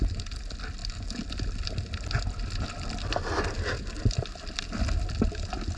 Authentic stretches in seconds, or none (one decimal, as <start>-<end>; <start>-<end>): 0.0-5.8